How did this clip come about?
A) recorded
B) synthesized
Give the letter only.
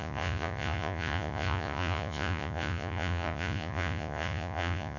B